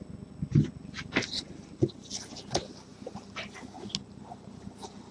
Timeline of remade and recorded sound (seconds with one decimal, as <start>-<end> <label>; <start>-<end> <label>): 0.0-5.1 recorded